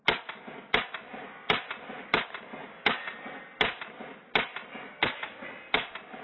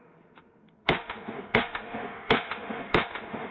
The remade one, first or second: second